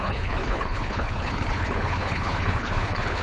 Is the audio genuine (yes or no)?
no